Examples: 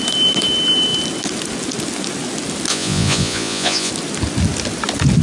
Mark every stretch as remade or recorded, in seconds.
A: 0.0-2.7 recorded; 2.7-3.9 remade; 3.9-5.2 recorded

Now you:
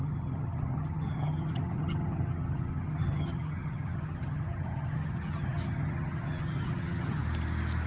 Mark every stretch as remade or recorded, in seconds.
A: 0.0-7.2 remade; 7.2-7.9 recorded

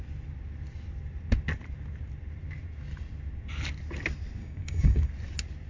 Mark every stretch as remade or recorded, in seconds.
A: 0.0-4.4 recorded; 4.4-5.1 remade; 5.1-5.7 recorded

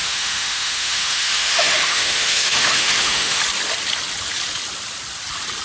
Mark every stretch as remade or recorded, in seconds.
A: 0.0-3.4 remade; 3.4-5.6 recorded

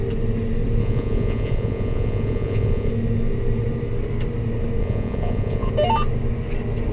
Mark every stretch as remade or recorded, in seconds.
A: 0.0-0.8 recorded; 0.8-2.9 remade; 2.9-4.8 recorded; 4.8-5.7 remade; 5.7-6.9 recorded

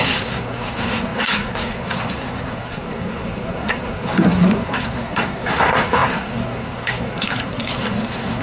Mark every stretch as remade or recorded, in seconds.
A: 0.0-8.4 remade

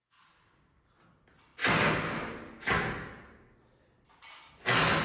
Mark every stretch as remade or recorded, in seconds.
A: 0.0-5.0 recorded